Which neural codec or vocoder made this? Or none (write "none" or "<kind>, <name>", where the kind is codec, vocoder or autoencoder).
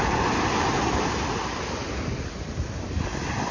none